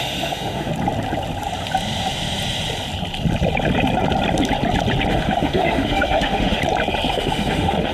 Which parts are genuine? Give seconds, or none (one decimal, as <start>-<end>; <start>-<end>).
0.7-5.1; 6.6-7.1